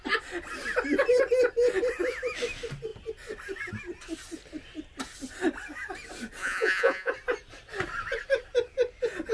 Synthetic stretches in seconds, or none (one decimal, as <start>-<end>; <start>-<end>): 6.4-7.1